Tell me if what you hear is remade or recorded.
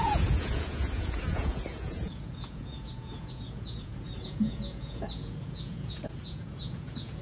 remade